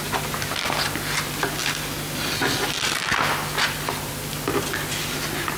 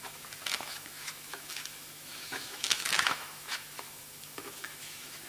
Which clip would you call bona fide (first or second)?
first